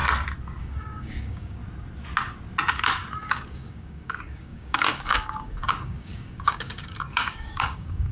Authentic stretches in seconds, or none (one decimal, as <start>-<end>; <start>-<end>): 0.0-0.6; 1.6-3.2